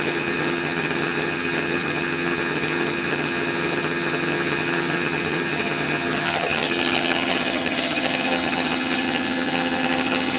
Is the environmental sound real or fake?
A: fake